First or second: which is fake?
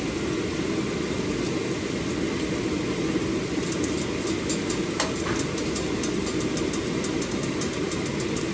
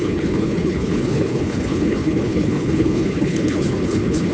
second